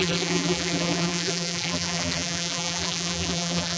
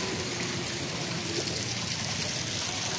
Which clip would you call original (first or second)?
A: second